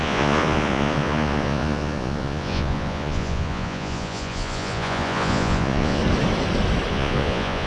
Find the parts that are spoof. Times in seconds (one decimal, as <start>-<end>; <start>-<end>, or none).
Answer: 0.0-6.0; 6.9-7.7

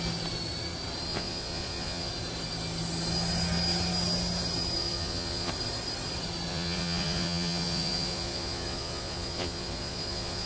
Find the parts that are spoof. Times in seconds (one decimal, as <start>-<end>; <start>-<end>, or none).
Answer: 1.1-2.1; 4.8-5.5; 6.5-10.5

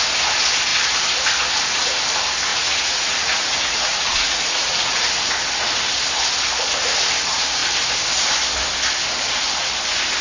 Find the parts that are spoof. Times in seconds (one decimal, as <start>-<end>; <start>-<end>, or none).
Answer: 2.5-5.0

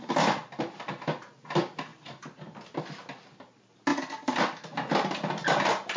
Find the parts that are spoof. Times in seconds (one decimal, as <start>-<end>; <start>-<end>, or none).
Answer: none